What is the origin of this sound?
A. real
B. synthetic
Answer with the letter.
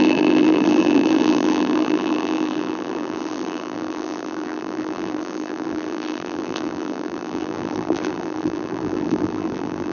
B